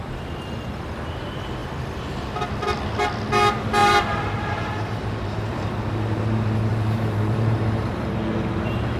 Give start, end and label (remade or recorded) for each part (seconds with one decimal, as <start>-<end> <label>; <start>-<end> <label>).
0.0-3.8 recorded; 3.8-5.8 remade; 5.8-6.7 recorded; 6.7-8.1 remade; 8.1-9.0 recorded